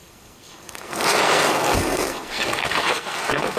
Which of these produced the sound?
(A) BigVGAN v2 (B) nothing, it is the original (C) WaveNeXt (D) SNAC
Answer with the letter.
D